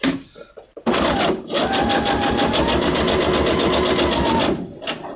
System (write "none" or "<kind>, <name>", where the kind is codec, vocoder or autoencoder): none